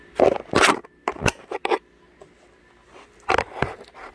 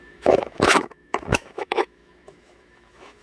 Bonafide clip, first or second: first